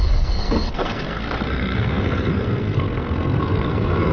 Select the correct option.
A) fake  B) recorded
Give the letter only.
A